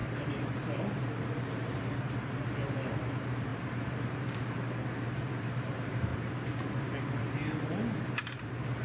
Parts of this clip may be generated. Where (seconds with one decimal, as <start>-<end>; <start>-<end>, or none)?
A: 0.0-6.1; 7.2-8.8